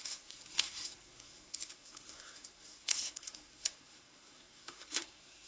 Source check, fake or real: fake